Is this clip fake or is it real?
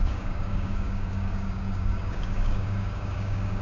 fake